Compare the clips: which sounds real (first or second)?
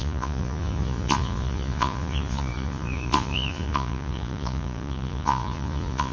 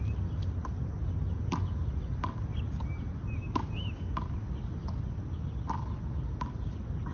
second